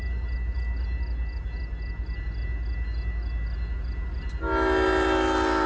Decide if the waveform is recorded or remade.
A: recorded